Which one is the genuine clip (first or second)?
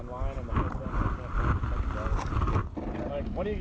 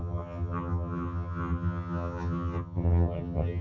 first